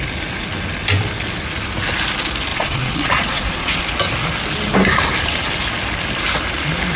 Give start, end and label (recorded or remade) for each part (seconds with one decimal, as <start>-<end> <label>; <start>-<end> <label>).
0.0-2.5 recorded; 2.5-3.8 remade; 3.8-7.0 recorded